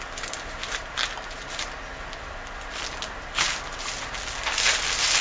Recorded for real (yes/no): yes